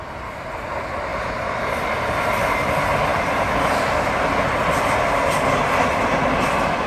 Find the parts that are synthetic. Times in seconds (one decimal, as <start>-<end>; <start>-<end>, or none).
none